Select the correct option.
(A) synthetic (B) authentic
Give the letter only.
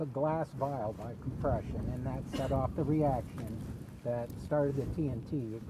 B